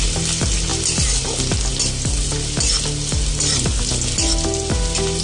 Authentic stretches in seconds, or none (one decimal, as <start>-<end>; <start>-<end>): 0.0-5.2